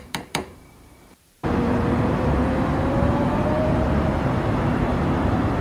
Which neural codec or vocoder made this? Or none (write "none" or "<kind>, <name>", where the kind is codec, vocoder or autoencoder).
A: vocoder, BigVGAN v2